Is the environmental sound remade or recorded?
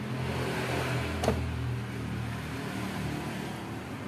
recorded